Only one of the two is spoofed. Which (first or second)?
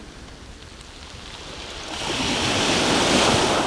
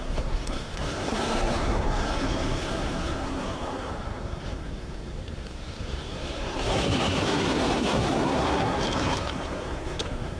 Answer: second